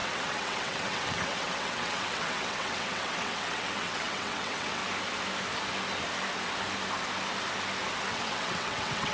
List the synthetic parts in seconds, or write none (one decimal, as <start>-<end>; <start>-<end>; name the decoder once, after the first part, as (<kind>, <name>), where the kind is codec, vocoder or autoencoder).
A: 0.0-4.8 (vocoder, WaveNeXt); 8.1-9.1

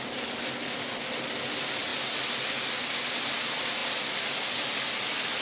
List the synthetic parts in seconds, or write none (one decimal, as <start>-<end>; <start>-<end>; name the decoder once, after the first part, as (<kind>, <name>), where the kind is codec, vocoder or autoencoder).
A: none

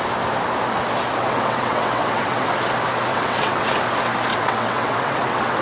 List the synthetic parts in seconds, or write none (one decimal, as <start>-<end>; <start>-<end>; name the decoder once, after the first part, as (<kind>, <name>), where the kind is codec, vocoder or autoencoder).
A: 1.2-2.5 (vocoder, WaveNeXt); 3.1-3.8; 4.3-5.6

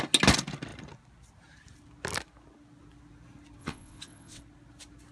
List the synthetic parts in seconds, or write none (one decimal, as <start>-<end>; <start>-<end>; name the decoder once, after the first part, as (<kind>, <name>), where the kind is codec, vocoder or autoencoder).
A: 3.6-4.4 (vocoder, WaveNeXt)

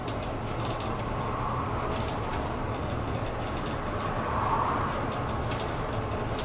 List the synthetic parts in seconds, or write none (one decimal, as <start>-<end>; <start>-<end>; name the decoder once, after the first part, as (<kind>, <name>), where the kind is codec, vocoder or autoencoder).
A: none

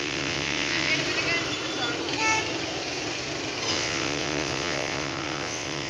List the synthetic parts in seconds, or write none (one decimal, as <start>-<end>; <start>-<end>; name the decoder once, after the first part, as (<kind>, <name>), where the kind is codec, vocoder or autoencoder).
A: 0.0-0.9 (vocoder, WaveNeXt); 3.7-5.9

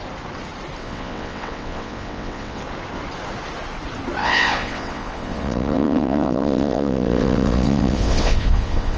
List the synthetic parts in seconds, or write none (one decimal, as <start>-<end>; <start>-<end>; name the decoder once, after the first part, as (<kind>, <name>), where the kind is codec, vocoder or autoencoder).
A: 0.8-2.6 (vocoder, WaveNeXt); 4.2-9.0

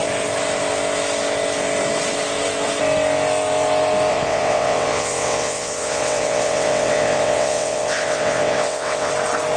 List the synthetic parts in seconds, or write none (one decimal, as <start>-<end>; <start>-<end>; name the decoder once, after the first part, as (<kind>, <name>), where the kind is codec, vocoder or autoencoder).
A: 4.1-9.1 (vocoder, WaveNeXt)